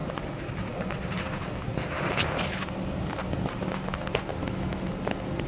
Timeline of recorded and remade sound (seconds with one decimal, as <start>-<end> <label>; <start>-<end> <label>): 0.0-4.4 recorded; 4.4-4.9 remade; 4.9-5.5 recorded